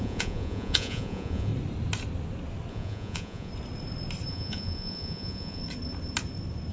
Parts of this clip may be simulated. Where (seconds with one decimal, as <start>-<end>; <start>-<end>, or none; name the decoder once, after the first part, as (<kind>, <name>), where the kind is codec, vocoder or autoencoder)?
0.0-1.5 (vocoder, Vocos); 2.7-3.5; 4.3-5.6